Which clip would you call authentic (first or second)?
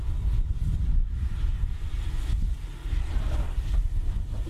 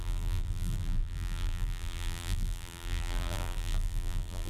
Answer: first